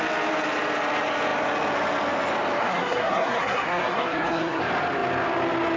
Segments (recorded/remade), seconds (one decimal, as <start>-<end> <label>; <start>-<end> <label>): 0.0-2.6 recorded; 2.6-4.6 remade; 4.6-5.8 recorded